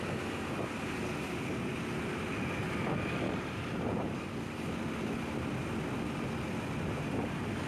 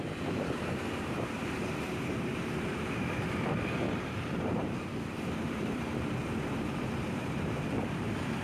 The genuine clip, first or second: first